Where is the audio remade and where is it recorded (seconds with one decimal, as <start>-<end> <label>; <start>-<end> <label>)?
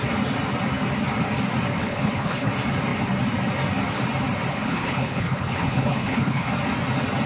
0.0-1.8 recorded; 1.8-2.5 remade; 2.5-4.5 recorded; 4.5-6.5 remade; 6.5-7.3 recorded